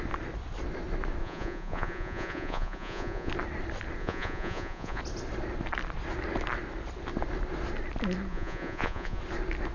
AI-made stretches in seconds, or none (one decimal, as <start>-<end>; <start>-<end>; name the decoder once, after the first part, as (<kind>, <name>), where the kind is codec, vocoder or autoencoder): 1.2-3.3 (vocoder, Vocos); 4.0-5.0; 8.3-9.2